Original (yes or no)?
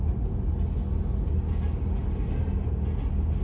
yes